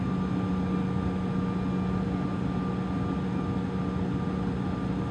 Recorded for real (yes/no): yes